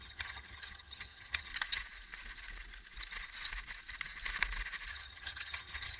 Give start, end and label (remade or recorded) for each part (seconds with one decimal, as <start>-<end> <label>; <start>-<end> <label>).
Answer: 0.0-1.5 remade; 1.5-4.9 recorded; 4.9-6.0 remade